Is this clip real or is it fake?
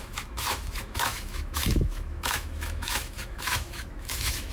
fake